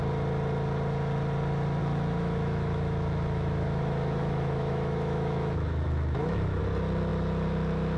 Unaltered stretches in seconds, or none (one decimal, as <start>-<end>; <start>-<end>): 0.0-1.8; 6.6-8.0